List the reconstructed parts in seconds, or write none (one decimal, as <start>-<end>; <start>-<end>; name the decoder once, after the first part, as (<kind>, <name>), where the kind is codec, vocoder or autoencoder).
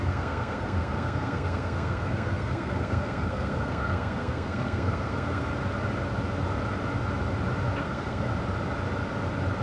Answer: 0.0-5.5 (codec, SNAC); 7.8-8.3